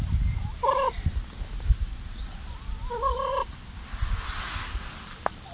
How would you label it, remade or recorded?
recorded